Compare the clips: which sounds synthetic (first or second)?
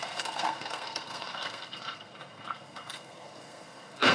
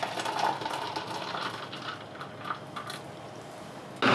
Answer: first